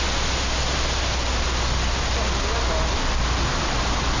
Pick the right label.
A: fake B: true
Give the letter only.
B